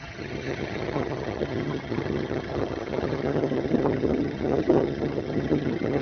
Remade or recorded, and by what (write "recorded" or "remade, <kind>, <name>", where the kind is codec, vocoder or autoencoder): remade, vocoder, HiFi-GAN